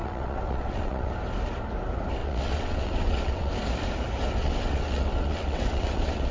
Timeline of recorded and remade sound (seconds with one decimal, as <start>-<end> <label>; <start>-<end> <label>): 0.0-1.1 remade; 1.1-2.2 recorded; 2.2-3.5 remade; 3.5-4.4 recorded; 4.4-6.3 remade